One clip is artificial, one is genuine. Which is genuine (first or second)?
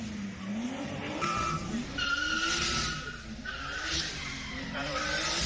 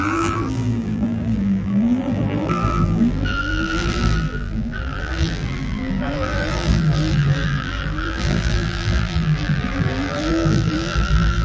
first